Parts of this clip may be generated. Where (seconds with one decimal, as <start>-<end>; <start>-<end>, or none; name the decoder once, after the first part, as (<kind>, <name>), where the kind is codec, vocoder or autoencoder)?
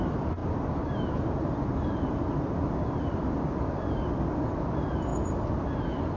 none